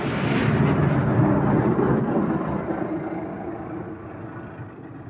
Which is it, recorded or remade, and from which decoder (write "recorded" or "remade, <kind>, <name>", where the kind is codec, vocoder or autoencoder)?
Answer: recorded